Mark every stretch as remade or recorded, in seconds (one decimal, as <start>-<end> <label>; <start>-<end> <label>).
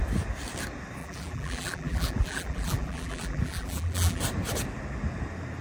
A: 0.0-1.0 recorded; 1.0-4.2 remade; 4.2-5.6 recorded